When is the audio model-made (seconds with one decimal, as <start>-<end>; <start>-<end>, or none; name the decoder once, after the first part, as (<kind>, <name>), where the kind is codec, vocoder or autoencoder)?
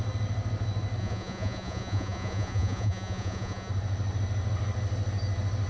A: 1.0-3.7 (vocoder, Vocos)